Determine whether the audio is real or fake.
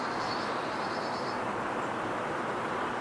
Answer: fake